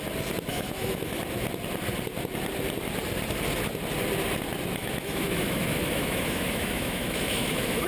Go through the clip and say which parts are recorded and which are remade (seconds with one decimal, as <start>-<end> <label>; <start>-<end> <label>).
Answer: 0.0-0.5 recorded; 0.5-1.2 remade; 1.2-4.8 recorded; 4.8-7.9 remade